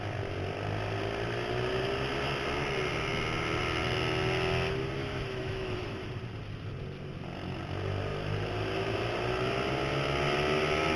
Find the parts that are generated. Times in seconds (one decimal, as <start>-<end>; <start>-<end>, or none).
5.0-6.1